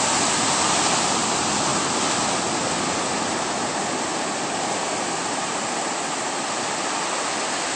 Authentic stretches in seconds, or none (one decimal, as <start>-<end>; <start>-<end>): 0.0-7.8